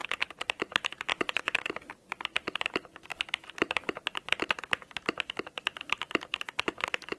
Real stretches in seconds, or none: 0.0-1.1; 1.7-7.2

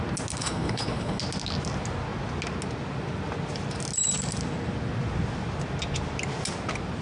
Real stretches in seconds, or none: 0.0-0.4; 1.2-7.0

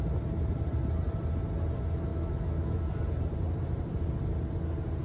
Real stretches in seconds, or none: 0.0-2.1; 2.8-5.0

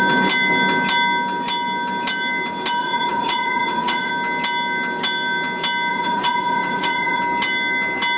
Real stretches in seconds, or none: 0.0-2.8; 4.1-5.9; 7.2-8.2

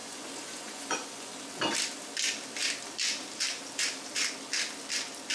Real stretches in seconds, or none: 1.3-5.3